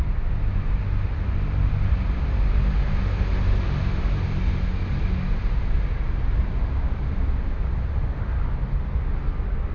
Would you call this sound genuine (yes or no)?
yes